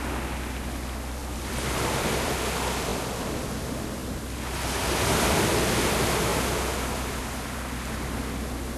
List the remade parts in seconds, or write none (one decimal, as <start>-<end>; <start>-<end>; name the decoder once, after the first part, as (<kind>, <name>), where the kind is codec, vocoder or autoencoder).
1.2-2.3 (vocoder, BigVGAN v2); 4.0-5.5

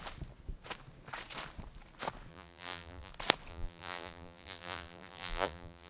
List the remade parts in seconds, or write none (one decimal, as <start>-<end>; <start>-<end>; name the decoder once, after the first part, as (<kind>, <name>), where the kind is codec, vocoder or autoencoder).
2.3-3.1 (vocoder, BigVGAN v2); 3.5-5.9